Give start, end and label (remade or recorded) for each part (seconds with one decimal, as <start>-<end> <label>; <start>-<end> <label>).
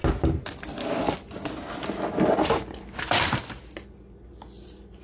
0.0-5.0 recorded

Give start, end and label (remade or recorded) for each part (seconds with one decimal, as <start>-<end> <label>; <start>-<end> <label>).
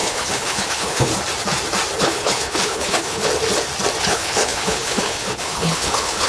0.0-1.1 remade; 1.1-2.0 recorded; 2.0-3.3 remade; 3.3-4.0 recorded; 4.0-6.3 remade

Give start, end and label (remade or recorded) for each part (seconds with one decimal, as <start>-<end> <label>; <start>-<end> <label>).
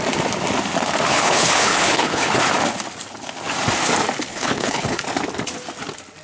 0.0-1.1 recorded; 1.1-2.4 remade; 2.4-4.3 recorded; 4.3-5.0 remade; 5.0-6.2 recorded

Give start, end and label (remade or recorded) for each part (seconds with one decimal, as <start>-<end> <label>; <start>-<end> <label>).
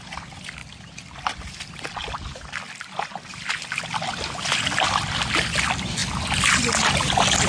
0.0-7.5 recorded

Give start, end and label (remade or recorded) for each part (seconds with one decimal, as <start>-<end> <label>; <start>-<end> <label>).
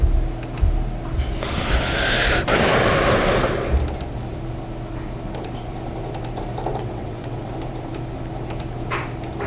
0.0-6.7 recorded; 6.7-7.5 remade; 7.5-9.5 recorded